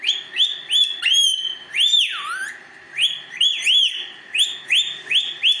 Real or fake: real